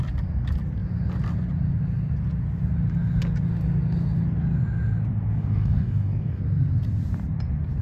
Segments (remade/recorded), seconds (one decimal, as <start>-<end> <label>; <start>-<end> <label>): 0.0-5.3 recorded; 5.3-6.4 remade; 6.4-7.8 recorded